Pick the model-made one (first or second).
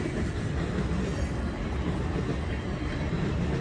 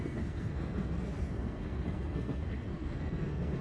second